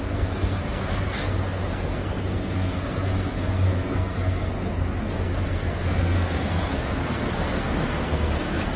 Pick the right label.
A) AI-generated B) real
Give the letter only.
A